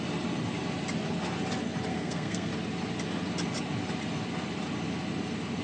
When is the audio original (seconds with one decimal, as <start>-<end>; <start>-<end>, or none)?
0.0-1.9; 2.5-5.6